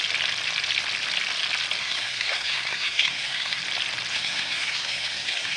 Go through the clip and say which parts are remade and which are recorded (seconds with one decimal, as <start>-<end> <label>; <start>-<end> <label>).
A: 0.0-1.8 recorded; 1.8-3.6 remade; 3.6-4.1 recorded; 4.1-5.6 remade

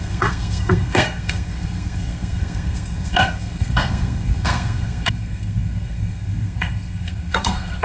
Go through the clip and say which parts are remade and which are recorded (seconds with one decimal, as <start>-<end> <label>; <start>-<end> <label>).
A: 0.0-7.8 remade

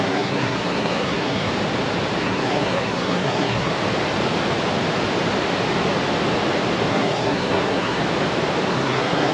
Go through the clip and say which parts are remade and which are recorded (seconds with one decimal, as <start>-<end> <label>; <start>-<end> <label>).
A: 0.0-1.5 remade; 1.5-2.2 recorded; 2.2-3.7 remade; 3.7-6.9 recorded; 6.9-8.0 remade; 8.0-8.7 recorded; 8.7-9.3 remade

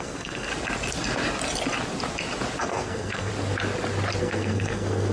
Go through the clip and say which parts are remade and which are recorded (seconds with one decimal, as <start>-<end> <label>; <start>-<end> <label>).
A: 0.0-0.5 remade; 0.5-2.6 recorded; 2.6-3.3 remade; 3.3-4.2 recorded; 4.2-5.1 remade

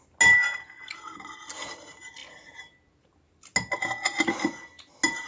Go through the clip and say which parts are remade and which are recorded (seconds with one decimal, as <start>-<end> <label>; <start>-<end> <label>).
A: 0.0-5.3 recorded